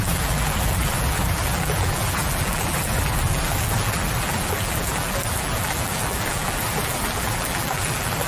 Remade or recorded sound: remade